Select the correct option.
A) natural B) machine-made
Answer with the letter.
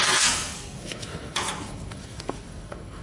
B